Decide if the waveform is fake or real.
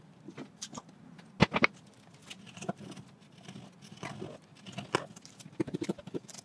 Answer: real